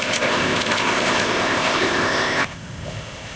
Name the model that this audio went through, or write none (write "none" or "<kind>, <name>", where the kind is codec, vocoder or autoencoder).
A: codec, ZipCodec